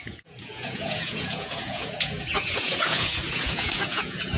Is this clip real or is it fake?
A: fake